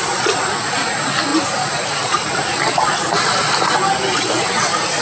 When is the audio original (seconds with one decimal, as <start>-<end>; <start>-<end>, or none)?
0.0-5.0